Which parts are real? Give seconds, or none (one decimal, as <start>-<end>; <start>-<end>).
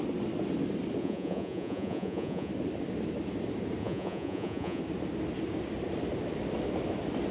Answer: 0.0-1.0; 2.5-3.8; 4.8-7.3